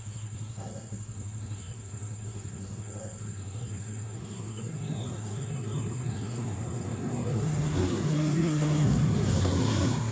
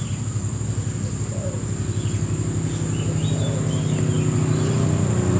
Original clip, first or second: second